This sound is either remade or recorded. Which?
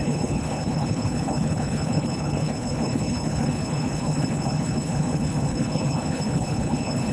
remade